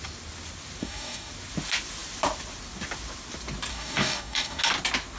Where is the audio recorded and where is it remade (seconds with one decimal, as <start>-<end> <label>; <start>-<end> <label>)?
0.0-0.8 recorded; 0.8-1.3 remade; 1.3-3.7 recorded; 3.7-4.6 remade; 4.6-5.2 recorded